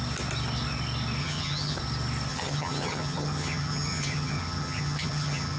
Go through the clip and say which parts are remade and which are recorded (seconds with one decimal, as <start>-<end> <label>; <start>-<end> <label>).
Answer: 0.0-1.2 recorded; 1.2-1.8 remade; 1.8-2.3 recorded; 2.3-5.6 remade